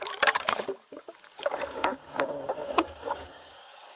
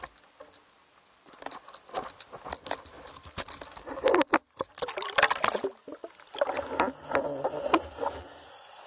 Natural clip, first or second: second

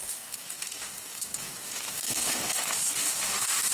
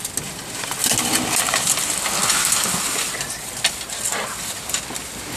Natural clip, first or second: second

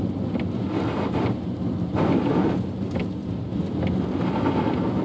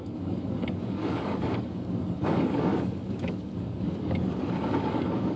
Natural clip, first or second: first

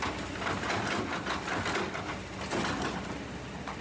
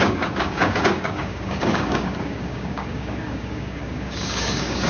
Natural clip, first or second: first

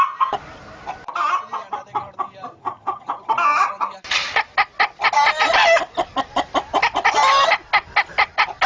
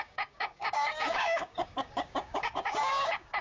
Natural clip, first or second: first